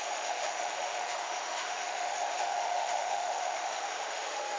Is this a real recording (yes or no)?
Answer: no